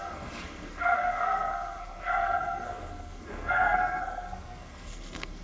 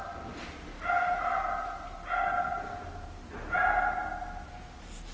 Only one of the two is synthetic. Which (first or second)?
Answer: first